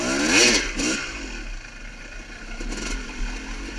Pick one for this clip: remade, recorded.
recorded